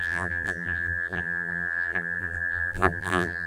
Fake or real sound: fake